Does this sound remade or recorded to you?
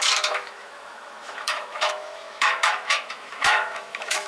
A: remade